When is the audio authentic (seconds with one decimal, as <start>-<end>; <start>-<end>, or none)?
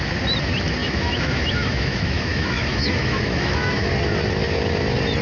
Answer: 0.0-0.8; 3.9-5.2